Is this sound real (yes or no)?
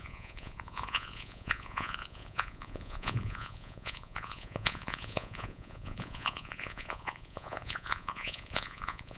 no